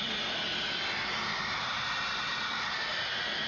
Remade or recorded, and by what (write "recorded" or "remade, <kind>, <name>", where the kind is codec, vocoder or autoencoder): recorded